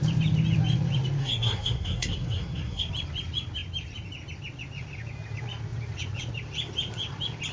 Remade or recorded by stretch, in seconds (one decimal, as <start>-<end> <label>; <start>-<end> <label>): 0.0-1.2 recorded; 1.2-2.9 remade; 2.9-7.5 recorded